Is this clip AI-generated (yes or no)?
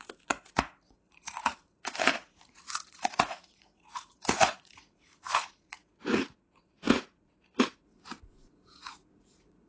yes